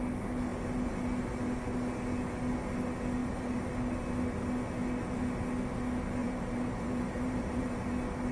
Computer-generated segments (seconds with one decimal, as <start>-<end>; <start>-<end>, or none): 3.2-3.7; 6.2-7.9